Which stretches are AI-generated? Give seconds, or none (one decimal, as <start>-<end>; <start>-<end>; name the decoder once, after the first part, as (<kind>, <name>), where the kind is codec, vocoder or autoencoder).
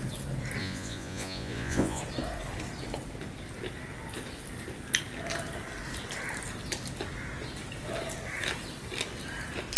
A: 0.6-2.0 (vocoder, Vocos)